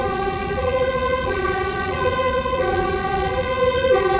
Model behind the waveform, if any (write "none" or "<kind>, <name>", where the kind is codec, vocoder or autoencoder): vocoder, Vocos